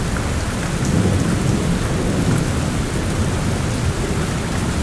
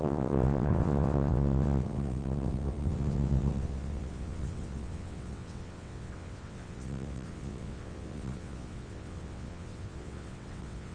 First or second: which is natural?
first